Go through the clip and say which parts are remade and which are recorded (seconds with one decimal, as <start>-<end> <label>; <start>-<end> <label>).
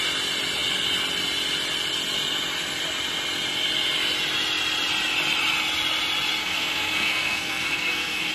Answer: 0.0-6.4 recorded; 6.4-8.3 remade